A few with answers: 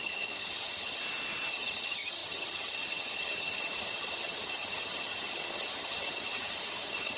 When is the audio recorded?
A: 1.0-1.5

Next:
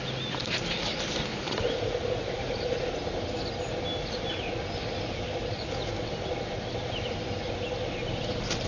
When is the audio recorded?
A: 0.0-1.3; 2.9-8.7

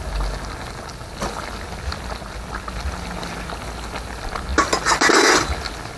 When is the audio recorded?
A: 0.0-6.0

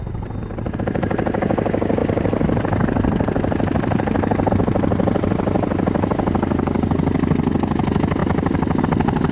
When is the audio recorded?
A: 0.0-9.3